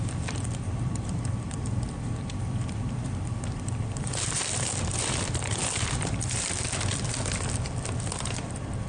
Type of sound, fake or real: fake